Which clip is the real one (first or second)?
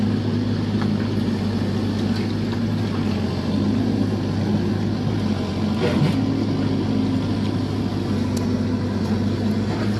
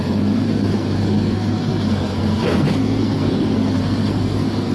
first